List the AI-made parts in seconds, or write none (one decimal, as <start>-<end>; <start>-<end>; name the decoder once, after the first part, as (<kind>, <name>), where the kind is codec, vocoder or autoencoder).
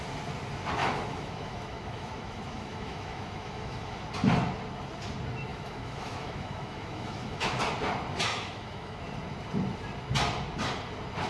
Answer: 0.8-4.0 (autoencoder, DAC-VAE); 5.5-7.6; 8.3-9.0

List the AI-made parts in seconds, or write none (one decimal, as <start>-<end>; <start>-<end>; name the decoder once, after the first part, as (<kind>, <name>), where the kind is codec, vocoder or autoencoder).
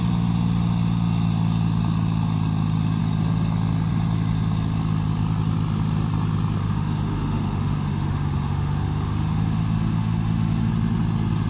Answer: 6.6-10.7 (autoencoder, DAC-VAE)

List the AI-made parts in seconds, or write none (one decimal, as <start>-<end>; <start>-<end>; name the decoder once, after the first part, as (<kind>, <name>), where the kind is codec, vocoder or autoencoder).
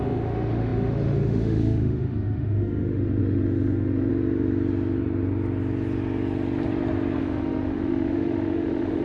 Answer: 0.0-4.1 (autoencoder, DAC-VAE); 7.2-9.0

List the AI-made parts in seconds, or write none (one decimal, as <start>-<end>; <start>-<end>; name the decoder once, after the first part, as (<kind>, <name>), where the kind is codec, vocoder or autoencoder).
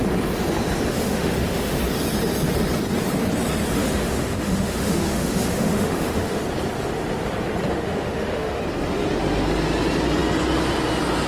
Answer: 0.9-1.8 (autoencoder, DAC-VAE); 3.8-6.4; 7.7-8.6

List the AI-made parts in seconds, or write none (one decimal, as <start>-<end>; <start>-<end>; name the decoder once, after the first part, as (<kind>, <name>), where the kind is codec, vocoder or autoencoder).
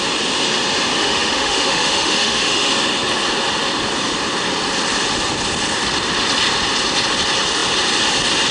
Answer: 1.0-2.7 (autoencoder, DAC-VAE)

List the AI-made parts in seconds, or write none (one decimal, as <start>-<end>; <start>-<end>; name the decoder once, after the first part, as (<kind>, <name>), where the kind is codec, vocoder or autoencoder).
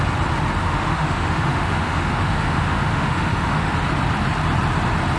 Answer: 0.6-3.7 (autoencoder, DAC-VAE)